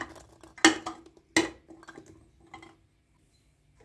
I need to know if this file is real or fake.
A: real